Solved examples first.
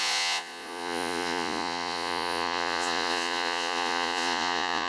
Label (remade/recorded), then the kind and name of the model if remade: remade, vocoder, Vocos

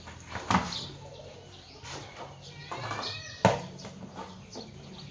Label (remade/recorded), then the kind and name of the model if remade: recorded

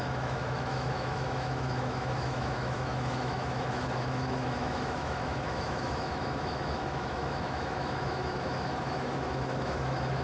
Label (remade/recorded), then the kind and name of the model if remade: remade, autoencoder, DAC-VAE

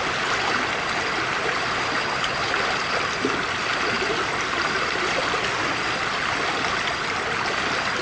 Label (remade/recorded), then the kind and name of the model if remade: recorded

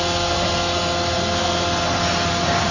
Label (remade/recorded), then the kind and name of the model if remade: recorded